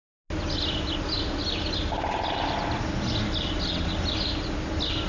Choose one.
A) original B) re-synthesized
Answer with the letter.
A